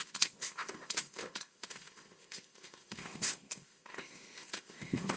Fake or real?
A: fake